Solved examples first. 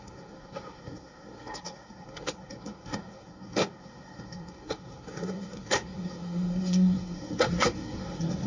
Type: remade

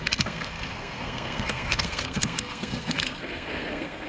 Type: remade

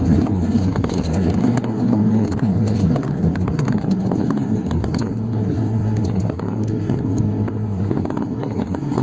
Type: remade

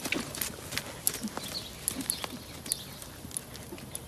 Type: recorded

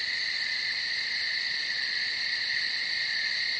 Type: recorded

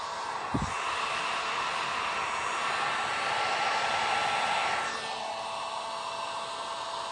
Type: recorded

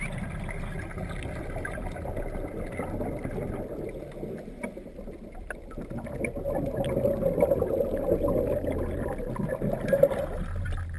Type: recorded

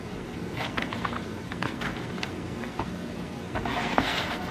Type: remade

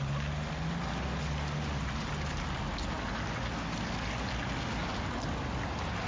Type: recorded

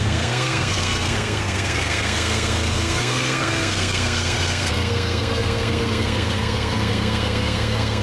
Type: remade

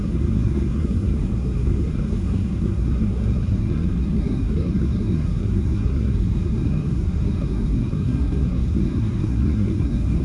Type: remade